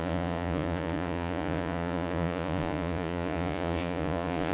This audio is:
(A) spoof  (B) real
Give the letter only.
A